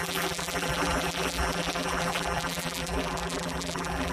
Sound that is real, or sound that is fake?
fake